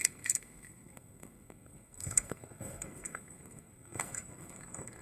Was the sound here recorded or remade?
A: remade